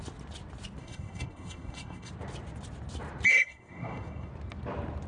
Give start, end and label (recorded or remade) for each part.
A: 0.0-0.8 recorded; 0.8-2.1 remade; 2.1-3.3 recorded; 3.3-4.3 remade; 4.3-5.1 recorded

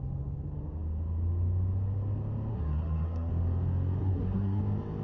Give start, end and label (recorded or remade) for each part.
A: 0.0-2.5 recorded; 2.5-3.3 remade; 3.3-4.0 recorded; 4.0-4.6 remade; 4.6-5.0 recorded

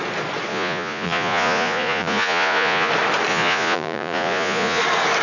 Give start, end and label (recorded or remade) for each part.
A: 0.0-0.5 recorded; 0.5-2.9 remade; 2.9-3.3 recorded; 3.3-4.8 remade; 4.8-5.2 recorded

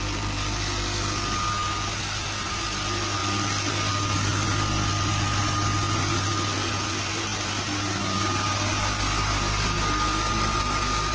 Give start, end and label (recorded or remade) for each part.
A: 0.0-11.1 recorded

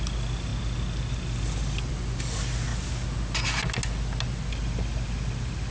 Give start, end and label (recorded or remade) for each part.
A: 0.0-5.7 recorded